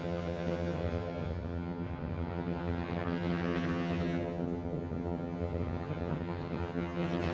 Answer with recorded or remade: remade